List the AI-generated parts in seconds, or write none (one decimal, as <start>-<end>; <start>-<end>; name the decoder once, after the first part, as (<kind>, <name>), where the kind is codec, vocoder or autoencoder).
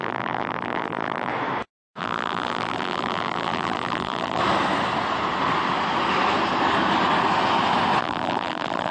0.0-1.3 (vocoder, BigVGAN v2); 2.0-4.4; 8.0-8.9